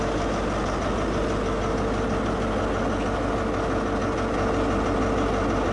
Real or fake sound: real